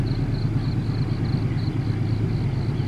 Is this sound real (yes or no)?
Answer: yes